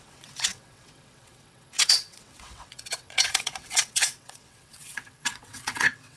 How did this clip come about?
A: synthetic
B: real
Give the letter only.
A